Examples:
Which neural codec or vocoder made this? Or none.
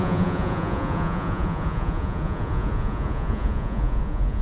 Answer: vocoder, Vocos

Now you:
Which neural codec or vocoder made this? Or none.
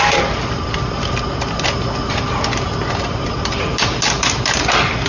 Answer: none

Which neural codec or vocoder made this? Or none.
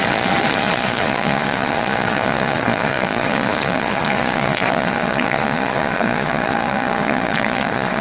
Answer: vocoder, Vocos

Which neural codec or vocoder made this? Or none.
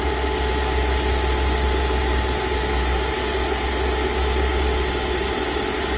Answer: none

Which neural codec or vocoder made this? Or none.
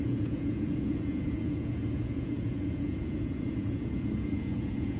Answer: vocoder, Vocos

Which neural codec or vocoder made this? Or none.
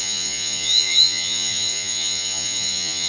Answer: vocoder, Vocos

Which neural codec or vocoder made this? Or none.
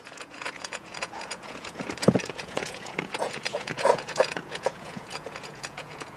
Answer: vocoder, Vocos